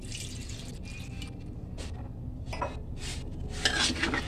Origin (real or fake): real